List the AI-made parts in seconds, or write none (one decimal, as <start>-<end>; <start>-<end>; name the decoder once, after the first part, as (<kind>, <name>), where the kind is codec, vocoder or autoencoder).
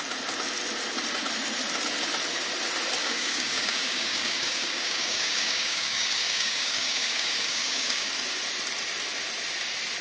3.0-8.1 (codec, DAC)